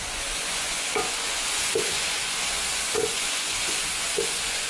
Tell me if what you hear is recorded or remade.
remade